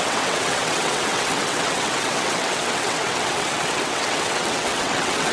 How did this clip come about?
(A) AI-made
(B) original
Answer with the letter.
A